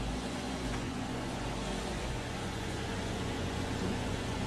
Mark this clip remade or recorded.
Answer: remade